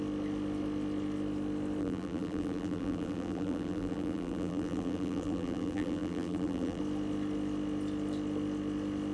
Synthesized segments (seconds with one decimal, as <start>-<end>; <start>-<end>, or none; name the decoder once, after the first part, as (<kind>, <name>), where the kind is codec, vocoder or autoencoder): 1.8-6.8 (vocoder, BigVGAN v2)